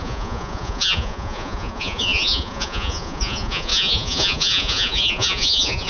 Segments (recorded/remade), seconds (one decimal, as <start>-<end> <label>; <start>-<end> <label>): 0.0-5.9 remade